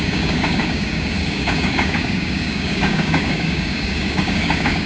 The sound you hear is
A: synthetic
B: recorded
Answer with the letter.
A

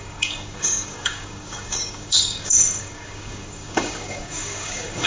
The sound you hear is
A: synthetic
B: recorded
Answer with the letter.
A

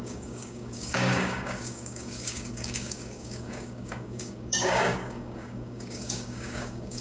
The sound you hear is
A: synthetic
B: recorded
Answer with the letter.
A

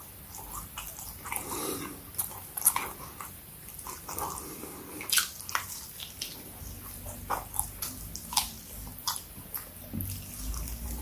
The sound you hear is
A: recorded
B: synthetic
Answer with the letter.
A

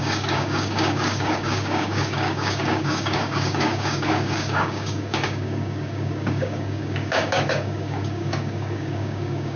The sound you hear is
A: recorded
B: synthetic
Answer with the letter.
B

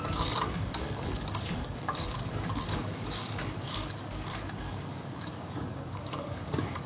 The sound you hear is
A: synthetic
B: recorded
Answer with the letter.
A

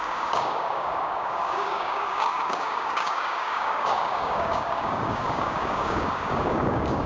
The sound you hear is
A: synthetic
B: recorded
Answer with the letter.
A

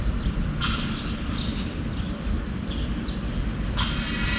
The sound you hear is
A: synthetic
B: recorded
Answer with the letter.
B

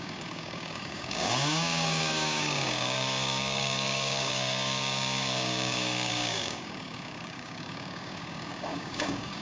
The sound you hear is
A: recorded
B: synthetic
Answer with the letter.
B